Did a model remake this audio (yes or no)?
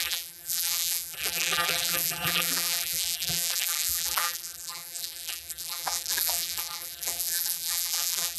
yes